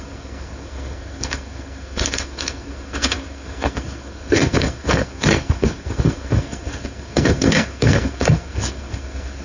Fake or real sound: fake